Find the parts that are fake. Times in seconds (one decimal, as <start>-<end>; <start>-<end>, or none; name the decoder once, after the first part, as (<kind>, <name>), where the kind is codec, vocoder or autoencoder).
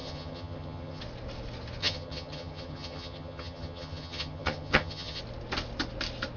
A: 0.0-1.0 (vocoder, HiFi-GAN); 1.8-5.2